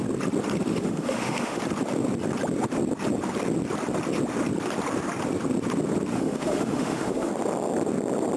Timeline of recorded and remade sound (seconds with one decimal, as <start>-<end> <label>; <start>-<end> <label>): 0.0-0.8 recorded; 0.8-1.6 remade; 1.6-6.1 recorded; 6.1-7.3 remade; 7.3-8.4 recorded